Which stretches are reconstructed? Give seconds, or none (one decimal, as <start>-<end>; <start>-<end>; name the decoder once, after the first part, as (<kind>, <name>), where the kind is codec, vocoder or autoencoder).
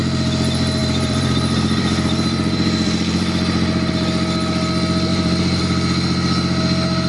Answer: 0.8-3.9 (vocoder, BigVGAN v2); 5.1-5.6